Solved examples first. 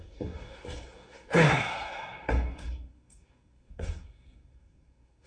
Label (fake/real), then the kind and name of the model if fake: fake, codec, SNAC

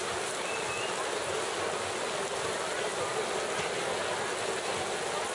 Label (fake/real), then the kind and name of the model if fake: real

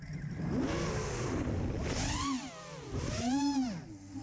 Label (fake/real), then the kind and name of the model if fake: real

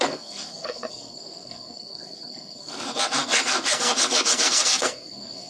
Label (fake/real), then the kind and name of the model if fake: fake, codec, SNAC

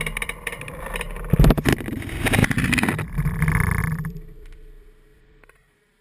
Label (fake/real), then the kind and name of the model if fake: fake, vocoder, BigVGAN v2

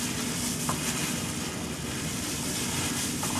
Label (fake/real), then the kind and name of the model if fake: real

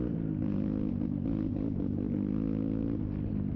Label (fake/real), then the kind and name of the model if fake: real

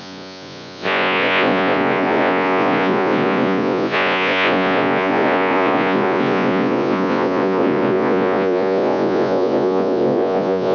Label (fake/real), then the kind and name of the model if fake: fake, vocoder, Vocos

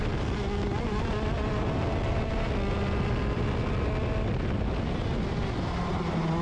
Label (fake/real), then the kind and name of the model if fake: real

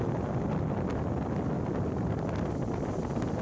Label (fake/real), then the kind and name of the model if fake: real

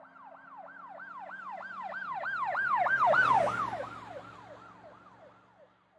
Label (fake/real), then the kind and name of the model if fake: real